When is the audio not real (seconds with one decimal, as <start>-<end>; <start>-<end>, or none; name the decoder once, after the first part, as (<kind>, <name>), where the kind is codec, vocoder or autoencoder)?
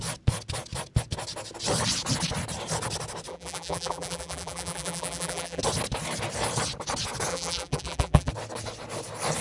3.3-5.6 (vocoder, BigVGAN v2); 7.3-8.3